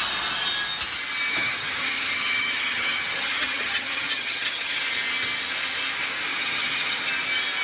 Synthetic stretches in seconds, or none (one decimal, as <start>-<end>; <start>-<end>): 1.3-4.9; 6.3-7.0